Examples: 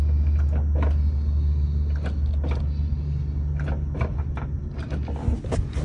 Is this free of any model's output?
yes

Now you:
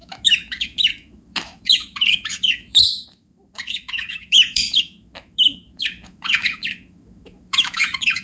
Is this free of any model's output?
no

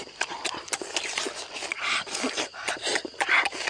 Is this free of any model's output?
yes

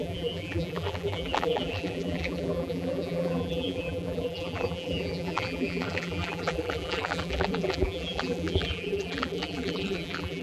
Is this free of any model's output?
no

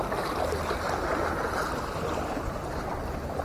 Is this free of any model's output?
yes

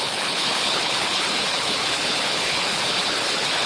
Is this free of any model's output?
no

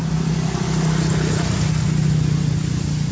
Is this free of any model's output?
yes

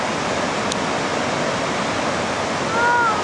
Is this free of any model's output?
yes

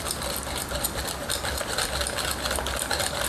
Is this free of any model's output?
yes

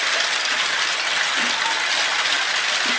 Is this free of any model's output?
yes